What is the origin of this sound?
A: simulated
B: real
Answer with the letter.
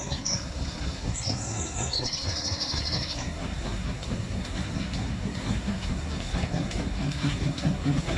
A